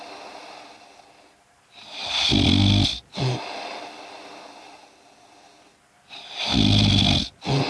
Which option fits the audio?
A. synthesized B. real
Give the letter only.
B